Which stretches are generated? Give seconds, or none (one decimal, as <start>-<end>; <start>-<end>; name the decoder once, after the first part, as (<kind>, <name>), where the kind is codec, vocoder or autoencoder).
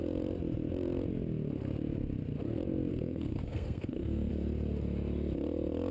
2.9-4.3 (codec, SNAC)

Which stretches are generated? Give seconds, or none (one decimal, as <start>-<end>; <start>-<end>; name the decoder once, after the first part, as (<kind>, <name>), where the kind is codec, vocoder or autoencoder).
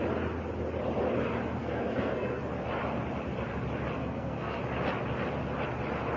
1.6-2.4 (codec, SNAC); 4.0-4.6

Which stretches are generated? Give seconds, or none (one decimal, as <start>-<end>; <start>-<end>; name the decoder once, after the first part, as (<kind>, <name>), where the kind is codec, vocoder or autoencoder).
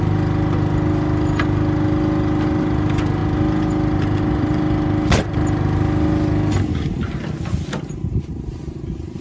none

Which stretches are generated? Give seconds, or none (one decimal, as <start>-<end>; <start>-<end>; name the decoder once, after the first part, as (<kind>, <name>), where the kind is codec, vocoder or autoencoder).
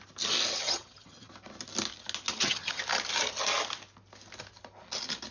0.5-1.3 (vocoder, HiFi-GAN); 2.3-2.8